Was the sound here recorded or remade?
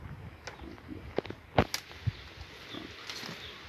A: recorded